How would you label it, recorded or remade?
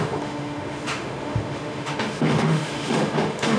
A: remade